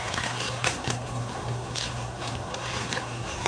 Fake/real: fake